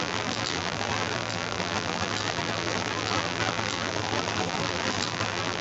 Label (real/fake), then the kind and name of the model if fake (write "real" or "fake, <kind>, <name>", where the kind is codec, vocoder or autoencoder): fake, vocoder, BigVGAN v2